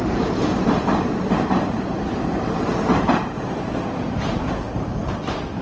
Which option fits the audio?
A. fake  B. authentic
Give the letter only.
A